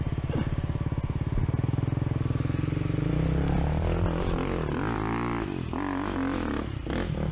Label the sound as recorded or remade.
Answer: recorded